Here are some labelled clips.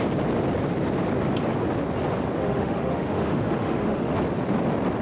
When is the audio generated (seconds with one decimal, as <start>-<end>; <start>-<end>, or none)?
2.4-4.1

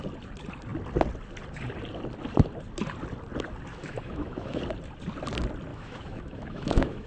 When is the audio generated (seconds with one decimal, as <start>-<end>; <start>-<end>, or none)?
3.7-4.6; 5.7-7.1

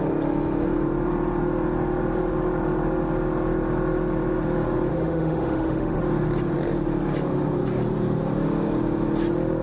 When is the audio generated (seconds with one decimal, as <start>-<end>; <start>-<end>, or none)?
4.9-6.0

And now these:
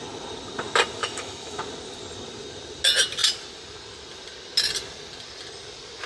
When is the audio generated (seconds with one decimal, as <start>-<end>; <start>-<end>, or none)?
1.0-1.6

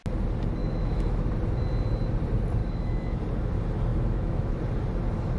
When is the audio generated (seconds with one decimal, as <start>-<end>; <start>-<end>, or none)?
0.6-1.3; 2.6-3.2; 3.9-4.6

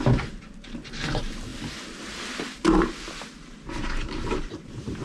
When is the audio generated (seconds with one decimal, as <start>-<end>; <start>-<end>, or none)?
none

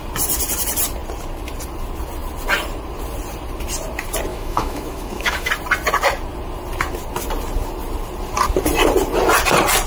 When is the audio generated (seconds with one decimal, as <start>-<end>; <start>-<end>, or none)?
4.3-5.5

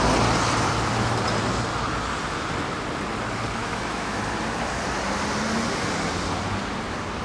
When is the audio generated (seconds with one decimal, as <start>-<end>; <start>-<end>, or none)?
3.6-4.2